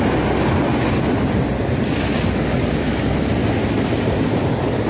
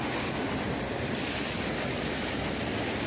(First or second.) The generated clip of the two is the second